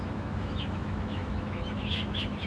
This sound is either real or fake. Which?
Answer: fake